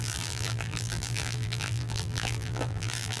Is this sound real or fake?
fake